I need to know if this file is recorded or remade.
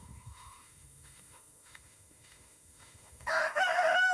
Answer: remade